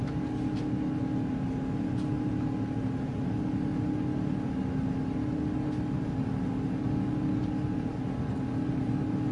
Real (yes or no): yes